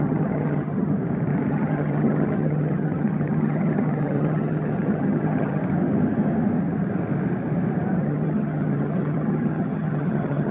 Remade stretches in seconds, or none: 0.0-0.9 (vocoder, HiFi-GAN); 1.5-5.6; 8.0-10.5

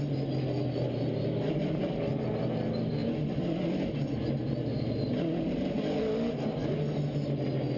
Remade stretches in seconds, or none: none

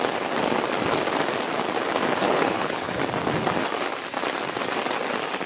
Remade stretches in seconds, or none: 2.2-3.0 (codec, HILCodec)

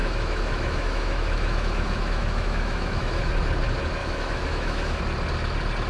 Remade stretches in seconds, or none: 0.0-3.3 (autoencoder, DAC-VAE); 4.0-5.0

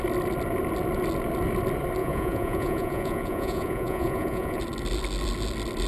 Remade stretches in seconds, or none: 2.0-4.6 (vocoder, Vocos)